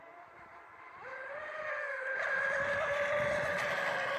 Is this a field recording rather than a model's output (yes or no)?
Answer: yes